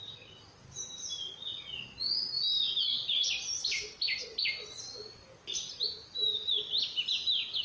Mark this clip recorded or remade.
recorded